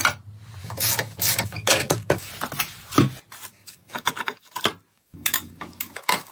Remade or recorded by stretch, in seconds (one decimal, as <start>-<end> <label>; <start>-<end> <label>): 0.0-0.6 recorded; 0.6-2.3 remade; 2.3-3.5 recorded; 3.5-4.5 remade; 4.5-4.9 recorded; 4.9-6.3 remade